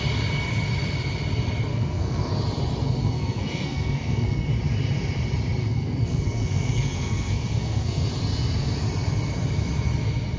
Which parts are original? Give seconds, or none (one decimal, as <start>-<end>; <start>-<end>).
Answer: 0.0-1.7; 2.3-2.8; 4.5-5.6; 8.1-10.4